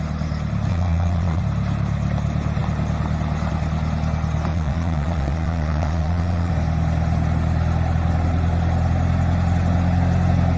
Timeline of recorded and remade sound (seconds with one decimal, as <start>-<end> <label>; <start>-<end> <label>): 0.0-0.7 recorded; 0.7-1.4 remade; 1.4-4.5 recorded; 4.5-6.5 remade; 6.5-10.6 recorded